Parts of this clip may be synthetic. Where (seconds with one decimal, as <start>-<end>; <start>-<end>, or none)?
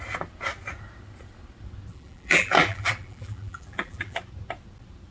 1.9-4.2